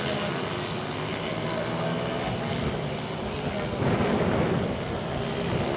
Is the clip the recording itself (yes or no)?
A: yes